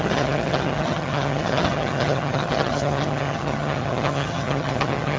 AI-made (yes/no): yes